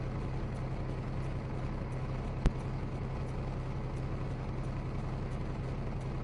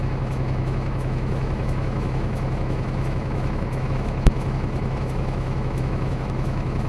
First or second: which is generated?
second